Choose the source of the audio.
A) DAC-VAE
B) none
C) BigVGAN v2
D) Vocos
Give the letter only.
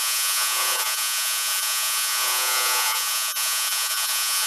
D